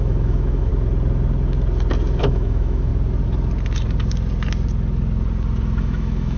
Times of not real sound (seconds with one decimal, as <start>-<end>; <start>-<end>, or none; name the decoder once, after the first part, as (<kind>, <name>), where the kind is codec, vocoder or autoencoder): 0.0-0.7 (autoencoder, DAC-VAE); 2.2-2.9; 5.8-6.4